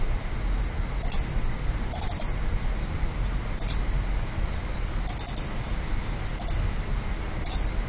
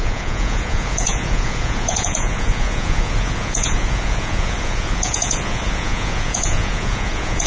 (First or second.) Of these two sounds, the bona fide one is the first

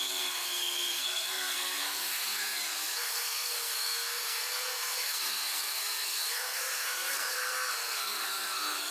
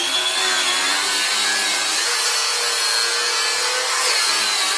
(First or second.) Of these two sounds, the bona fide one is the second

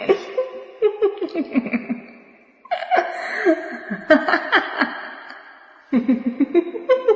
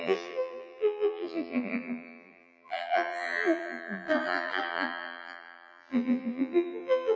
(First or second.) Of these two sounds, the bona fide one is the first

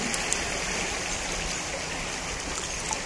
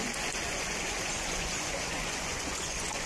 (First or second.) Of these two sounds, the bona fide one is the first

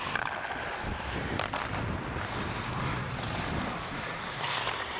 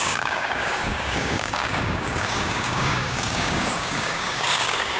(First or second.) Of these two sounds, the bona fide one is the first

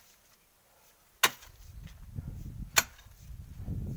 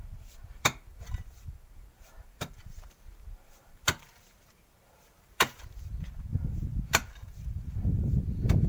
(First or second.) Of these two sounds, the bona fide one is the first